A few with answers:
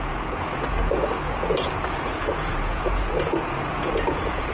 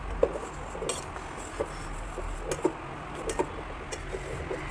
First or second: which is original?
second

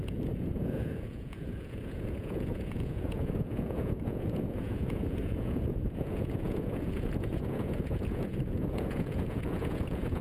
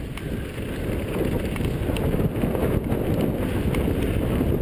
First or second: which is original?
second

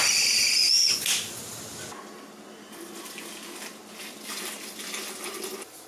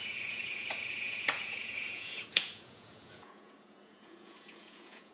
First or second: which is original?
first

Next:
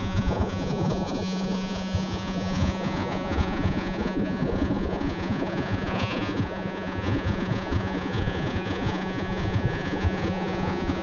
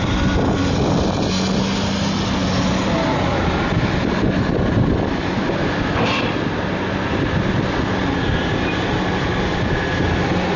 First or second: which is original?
second